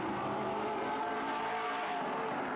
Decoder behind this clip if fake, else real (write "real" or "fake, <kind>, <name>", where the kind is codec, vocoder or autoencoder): real